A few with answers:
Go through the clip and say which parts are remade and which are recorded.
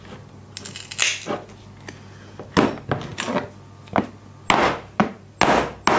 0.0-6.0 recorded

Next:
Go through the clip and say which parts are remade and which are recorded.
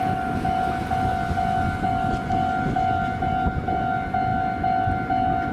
0.0-5.5 recorded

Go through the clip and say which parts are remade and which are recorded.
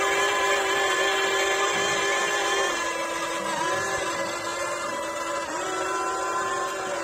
0.0-7.0 recorded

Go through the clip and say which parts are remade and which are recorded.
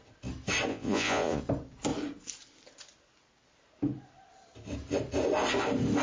0.0-0.7 recorded; 0.7-1.4 remade; 1.4-6.0 recorded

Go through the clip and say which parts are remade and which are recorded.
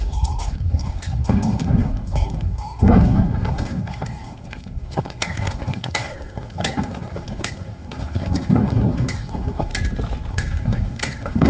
0.0-9.7 remade; 9.7-10.3 recorded; 10.3-11.5 remade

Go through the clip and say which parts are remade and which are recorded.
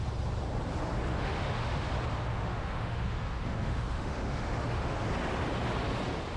0.0-1.1 recorded; 1.1-1.9 remade; 1.9-2.3 recorded; 2.3-5.0 remade; 5.0-6.4 recorded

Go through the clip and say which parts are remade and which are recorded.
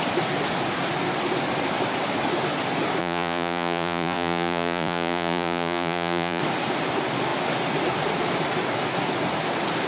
0.0-3.0 recorded; 3.0-6.4 remade; 6.4-9.9 recorded